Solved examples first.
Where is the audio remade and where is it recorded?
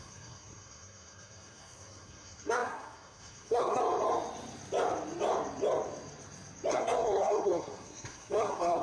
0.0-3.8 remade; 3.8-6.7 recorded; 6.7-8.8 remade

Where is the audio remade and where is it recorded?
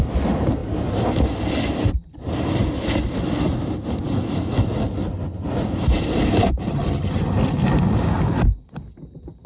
0.0-6.7 recorded; 6.7-7.3 remade; 7.3-9.5 recorded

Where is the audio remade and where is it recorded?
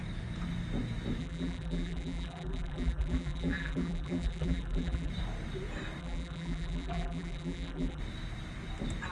0.0-1.2 recorded; 1.2-5.1 remade; 5.1-6.0 recorded; 6.0-8.0 remade; 8.0-9.1 recorded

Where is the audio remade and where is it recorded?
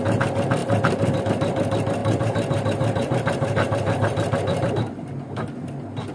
0.0-0.6 recorded; 0.6-1.2 remade; 1.2-2.0 recorded; 2.0-4.7 remade; 4.7-6.1 recorded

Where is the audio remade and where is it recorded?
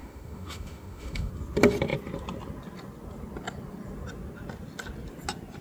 0.0-1.3 remade; 1.3-5.6 recorded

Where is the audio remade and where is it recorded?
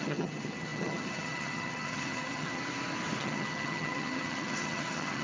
0.0-2.6 remade; 2.6-3.2 recorded; 3.2-5.2 remade